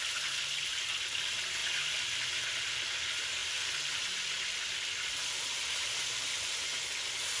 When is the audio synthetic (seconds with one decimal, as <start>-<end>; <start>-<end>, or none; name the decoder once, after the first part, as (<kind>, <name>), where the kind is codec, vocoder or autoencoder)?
none